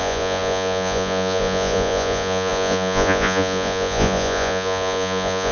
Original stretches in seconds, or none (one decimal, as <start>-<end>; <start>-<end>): none